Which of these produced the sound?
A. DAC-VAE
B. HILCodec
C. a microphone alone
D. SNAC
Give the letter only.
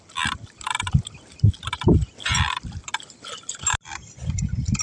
C